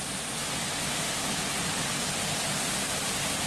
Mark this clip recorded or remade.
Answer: recorded